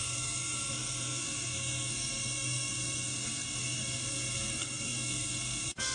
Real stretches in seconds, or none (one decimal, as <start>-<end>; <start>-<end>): none